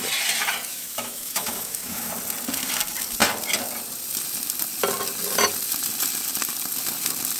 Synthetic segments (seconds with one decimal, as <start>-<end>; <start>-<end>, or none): 0.7-2.1